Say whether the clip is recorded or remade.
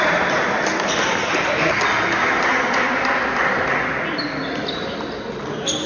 recorded